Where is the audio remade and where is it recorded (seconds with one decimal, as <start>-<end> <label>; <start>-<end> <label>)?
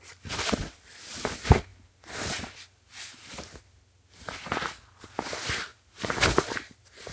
0.0-7.1 recorded